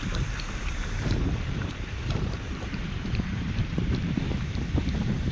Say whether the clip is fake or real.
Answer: fake